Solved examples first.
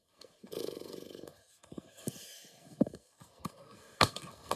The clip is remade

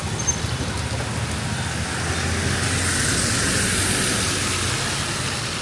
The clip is recorded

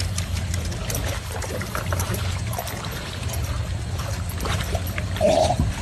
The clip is recorded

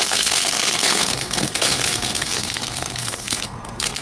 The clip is remade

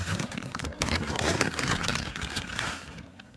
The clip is remade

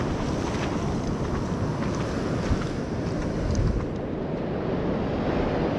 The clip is recorded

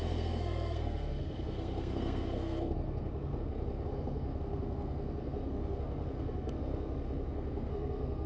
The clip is remade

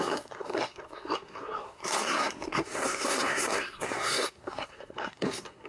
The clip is remade